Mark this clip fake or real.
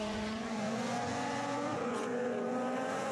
fake